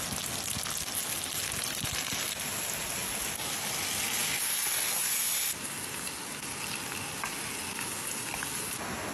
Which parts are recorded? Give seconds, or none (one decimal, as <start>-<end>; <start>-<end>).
0.0-9.1

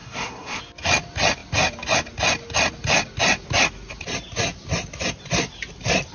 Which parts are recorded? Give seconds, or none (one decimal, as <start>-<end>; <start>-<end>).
0.6-6.1

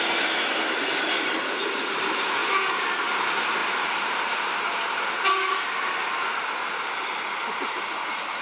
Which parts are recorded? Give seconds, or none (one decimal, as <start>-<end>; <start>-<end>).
0.0-3.6; 5.0-8.4

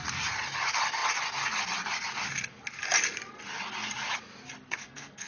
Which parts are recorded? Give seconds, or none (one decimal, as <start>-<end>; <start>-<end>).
0.0-4.8